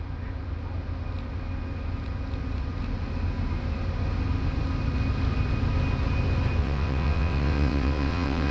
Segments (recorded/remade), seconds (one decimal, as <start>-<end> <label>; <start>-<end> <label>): 0.0-6.6 recorded; 6.6-8.5 remade